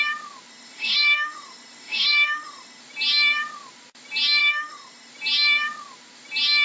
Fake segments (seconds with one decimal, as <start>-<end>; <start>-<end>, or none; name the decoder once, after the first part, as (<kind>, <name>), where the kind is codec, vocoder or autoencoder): 0.5-2.8 (autoencoder, DAC-VAE); 4.4-5.1